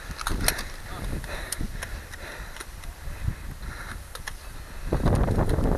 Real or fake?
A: real